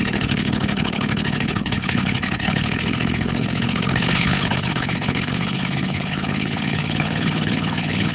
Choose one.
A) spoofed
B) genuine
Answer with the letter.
A